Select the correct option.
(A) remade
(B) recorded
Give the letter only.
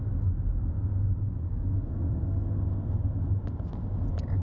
B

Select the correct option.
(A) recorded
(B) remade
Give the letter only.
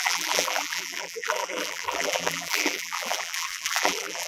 B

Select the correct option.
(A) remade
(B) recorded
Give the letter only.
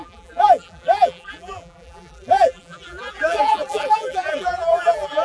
A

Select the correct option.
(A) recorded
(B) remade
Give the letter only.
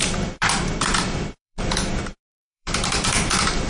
B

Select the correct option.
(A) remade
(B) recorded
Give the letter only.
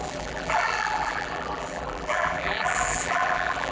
A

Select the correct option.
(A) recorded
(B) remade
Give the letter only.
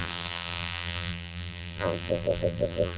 B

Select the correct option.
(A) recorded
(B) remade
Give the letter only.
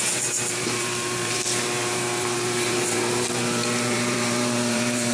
B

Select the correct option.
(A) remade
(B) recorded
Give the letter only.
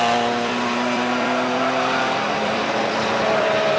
A